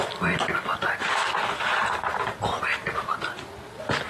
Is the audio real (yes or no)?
yes